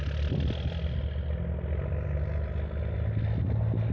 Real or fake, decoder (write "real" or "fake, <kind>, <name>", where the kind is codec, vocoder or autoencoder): real